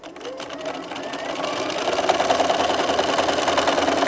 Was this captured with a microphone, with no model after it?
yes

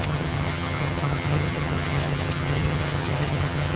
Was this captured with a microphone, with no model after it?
no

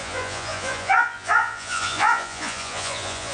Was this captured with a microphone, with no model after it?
no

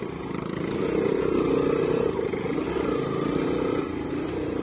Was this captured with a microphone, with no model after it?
yes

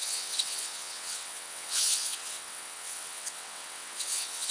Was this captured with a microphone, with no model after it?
no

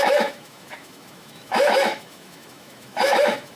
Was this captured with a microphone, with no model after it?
no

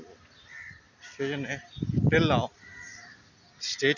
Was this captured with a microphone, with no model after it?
yes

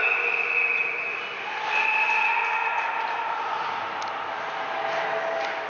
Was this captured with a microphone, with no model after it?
yes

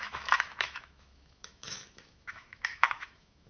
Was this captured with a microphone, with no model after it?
no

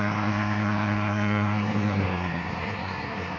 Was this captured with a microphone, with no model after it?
no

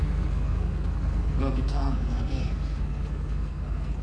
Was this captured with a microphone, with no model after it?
no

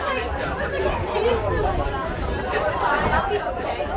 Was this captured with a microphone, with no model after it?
no